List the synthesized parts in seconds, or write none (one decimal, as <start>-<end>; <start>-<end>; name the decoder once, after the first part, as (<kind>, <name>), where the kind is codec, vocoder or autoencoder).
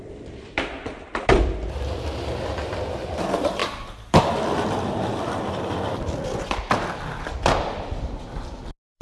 0.0-9.0 (vocoder, BigVGAN v2)